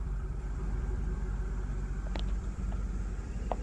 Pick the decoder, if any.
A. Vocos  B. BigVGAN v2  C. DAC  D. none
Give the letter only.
B